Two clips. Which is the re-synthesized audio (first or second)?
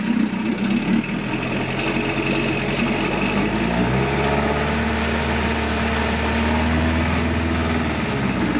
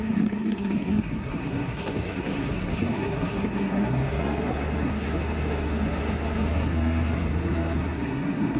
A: second